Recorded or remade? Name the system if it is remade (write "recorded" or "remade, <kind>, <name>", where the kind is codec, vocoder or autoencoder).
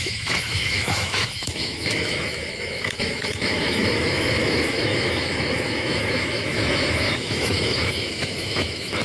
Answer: remade, autoencoder, DAC-VAE